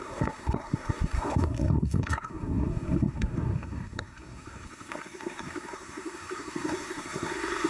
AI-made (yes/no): yes